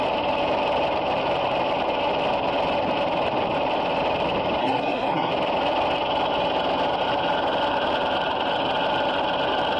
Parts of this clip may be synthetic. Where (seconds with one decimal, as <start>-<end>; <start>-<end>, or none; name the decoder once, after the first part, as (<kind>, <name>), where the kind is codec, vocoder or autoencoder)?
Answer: 4.6-5.3 (codec, SNAC)